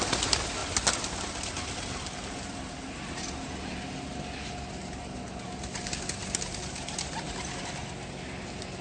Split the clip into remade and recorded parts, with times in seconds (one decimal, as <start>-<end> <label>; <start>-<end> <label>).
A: 0.0-8.8 recorded

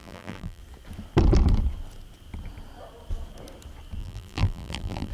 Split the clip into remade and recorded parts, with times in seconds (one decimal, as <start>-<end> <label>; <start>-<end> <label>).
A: 0.0-0.6 remade; 0.6-4.0 recorded; 4.0-5.1 remade

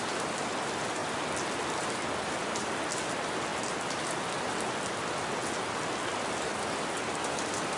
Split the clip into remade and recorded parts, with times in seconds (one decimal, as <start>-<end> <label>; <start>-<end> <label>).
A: 0.0-7.8 recorded

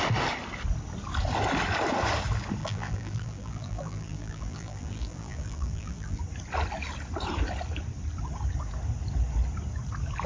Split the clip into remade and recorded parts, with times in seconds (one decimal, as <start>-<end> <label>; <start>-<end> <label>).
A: 0.0-2.6 recorded; 2.6-6.2 remade; 6.2-10.3 recorded

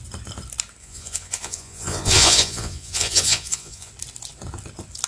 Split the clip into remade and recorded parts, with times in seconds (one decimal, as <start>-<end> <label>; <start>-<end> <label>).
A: 0.0-0.8 recorded; 0.8-3.9 remade; 3.9-5.1 recorded

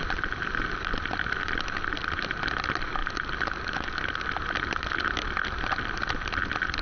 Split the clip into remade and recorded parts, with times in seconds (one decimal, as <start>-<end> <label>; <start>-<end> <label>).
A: 0.0-6.8 recorded

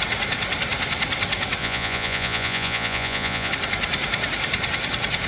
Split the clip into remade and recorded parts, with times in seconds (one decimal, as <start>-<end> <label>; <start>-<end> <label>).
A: 0.0-1.6 recorded; 1.6-3.5 remade; 3.5-5.3 recorded

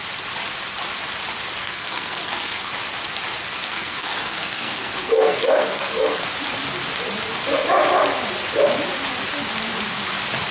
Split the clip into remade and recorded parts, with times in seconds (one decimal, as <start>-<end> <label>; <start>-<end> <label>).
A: 0.0-1.6 recorded; 1.6-2.7 remade; 2.7-3.5 recorded; 3.5-6.3 remade; 6.3-10.5 recorded